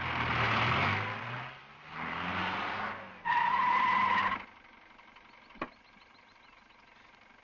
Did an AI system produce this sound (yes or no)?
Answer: no